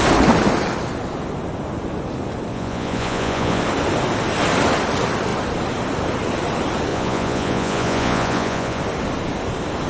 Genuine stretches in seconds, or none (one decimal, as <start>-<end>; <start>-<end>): 0.0-2.5; 3.6-6.9; 8.8-9.9